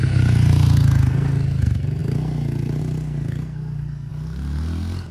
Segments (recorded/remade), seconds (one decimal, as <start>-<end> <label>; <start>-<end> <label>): 0.0-5.1 remade